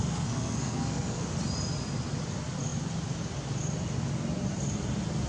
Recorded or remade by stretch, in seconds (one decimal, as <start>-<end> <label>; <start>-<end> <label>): 0.0-1.2 remade; 1.2-5.3 recorded

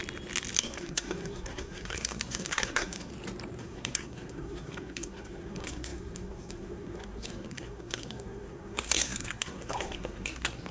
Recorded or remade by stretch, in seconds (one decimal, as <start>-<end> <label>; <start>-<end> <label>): 0.0-0.6 recorded; 0.6-3.1 remade; 3.1-3.6 recorded; 3.6-10.7 remade

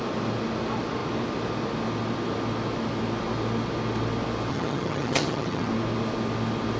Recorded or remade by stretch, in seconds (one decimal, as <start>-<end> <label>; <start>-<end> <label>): 0.0-4.5 recorded; 4.5-5.7 remade; 5.7-6.8 recorded

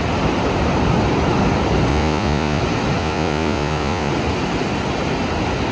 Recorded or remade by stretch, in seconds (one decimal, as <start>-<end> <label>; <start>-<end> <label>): 0.0-1.9 recorded; 1.9-2.6 remade; 2.6-3.0 recorded; 3.0-4.1 remade; 4.1-5.7 recorded

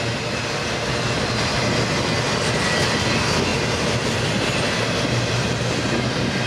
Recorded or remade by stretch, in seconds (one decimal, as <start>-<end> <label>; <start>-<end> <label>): 0.0-6.5 recorded